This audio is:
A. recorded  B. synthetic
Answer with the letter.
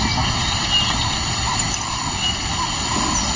A